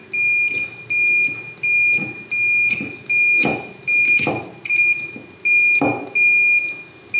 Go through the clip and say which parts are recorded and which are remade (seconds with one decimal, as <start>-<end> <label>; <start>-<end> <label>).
0.0-7.2 recorded